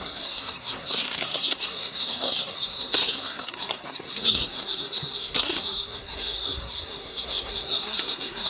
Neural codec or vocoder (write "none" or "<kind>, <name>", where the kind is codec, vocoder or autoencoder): codec, SNAC